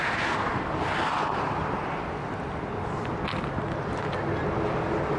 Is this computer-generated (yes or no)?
no